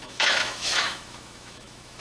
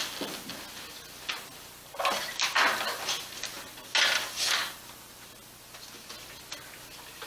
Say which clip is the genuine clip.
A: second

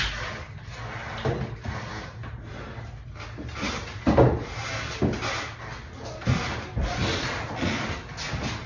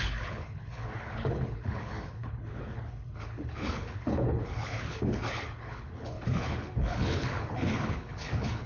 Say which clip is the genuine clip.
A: first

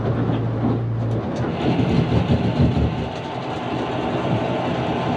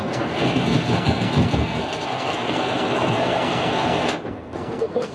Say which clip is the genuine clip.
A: first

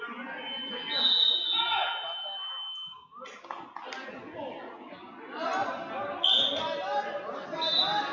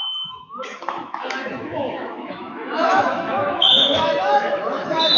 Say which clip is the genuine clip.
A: first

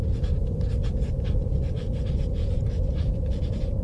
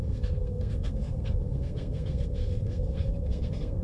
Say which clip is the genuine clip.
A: first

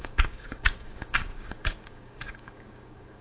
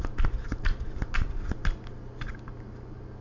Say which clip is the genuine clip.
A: second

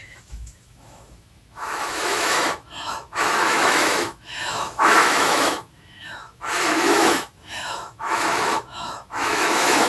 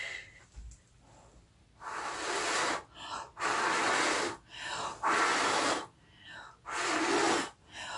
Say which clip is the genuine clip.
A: second